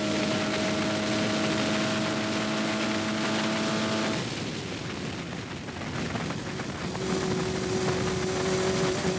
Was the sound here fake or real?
real